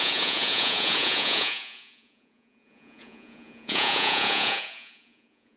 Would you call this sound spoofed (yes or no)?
yes